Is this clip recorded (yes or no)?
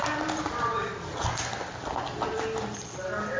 yes